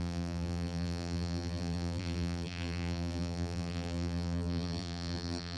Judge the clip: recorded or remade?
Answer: remade